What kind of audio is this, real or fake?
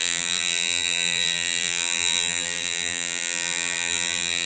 fake